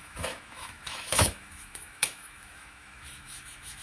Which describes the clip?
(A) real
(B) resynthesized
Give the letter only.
B